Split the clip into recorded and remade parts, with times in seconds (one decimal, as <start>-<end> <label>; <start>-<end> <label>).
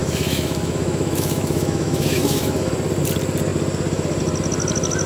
0.0-2.7 remade; 2.7-5.1 recorded